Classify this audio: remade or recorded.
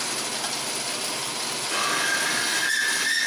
recorded